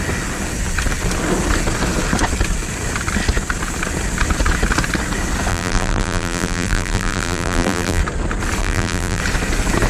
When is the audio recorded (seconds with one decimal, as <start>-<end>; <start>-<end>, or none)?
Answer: 0.0-5.5; 8.0-8.6; 9.2-9.9